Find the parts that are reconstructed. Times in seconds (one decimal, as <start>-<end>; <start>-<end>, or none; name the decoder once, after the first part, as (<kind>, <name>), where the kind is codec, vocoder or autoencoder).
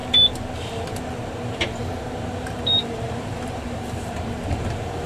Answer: 0.9-5.1 (vocoder, BigVGAN v2)